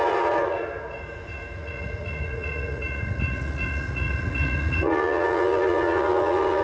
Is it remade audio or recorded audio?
remade